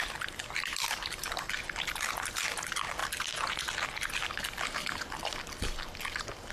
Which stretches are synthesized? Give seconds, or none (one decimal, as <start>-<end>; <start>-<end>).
none